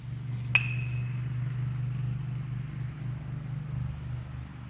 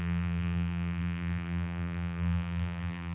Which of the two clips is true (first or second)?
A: first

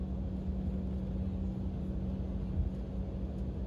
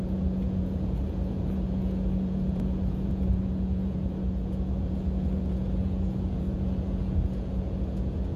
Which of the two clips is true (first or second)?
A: first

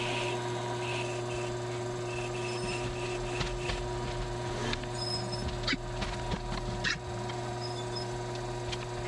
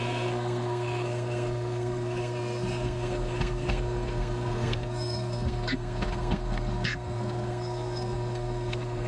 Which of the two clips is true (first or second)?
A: first